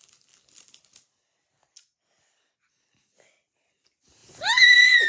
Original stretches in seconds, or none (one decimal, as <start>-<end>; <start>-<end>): 0.0-4.2